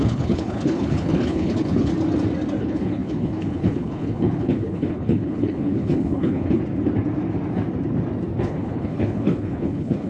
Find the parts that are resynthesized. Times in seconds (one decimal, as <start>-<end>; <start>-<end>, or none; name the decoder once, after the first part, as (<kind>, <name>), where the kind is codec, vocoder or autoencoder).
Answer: 0.0-1.9 (codec, HILCodec); 2.6-6.6; 8.4-10.1